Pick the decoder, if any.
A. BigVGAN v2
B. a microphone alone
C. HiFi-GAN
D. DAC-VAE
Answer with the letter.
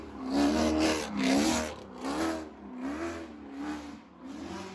B